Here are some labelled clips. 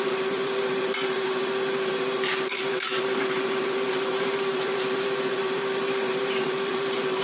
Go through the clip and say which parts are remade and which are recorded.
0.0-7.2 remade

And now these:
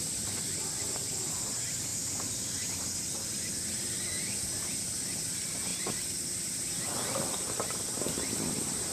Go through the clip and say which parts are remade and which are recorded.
0.0-1.9 recorded; 1.9-2.9 remade; 2.9-5.7 recorded; 5.7-8.0 remade; 8.0-8.9 recorded

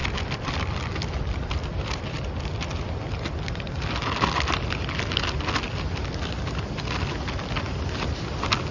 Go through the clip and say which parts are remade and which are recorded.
0.0-8.7 recorded

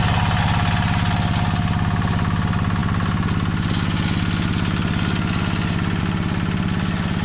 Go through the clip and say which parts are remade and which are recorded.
0.0-7.2 recorded